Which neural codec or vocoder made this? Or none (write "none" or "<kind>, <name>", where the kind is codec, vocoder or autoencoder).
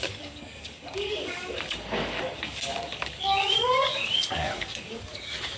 codec, DAC